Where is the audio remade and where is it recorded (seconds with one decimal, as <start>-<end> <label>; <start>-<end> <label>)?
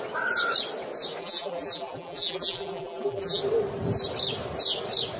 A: 0.0-1.2 recorded; 1.2-3.4 remade; 3.4-5.2 recorded